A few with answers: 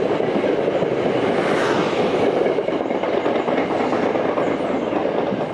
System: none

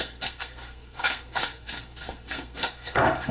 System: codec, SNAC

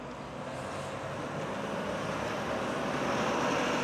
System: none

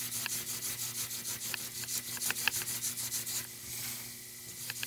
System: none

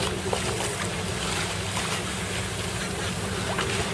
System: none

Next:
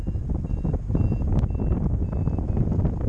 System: none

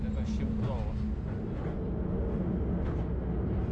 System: none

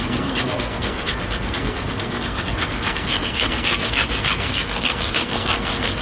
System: codec, SNAC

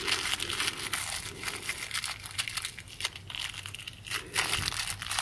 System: none